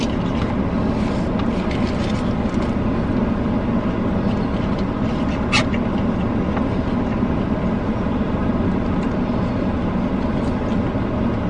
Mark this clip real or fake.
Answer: real